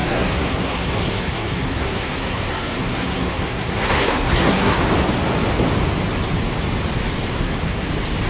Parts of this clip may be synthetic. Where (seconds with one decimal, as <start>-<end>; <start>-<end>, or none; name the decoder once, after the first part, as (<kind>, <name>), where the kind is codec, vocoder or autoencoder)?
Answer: 0.0-4.8 (codec, SNAC); 7.3-7.9